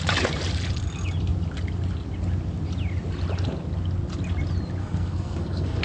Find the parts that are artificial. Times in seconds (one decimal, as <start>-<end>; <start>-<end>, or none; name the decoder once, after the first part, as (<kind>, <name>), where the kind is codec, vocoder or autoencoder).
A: 4.8-5.8 (codec, SNAC)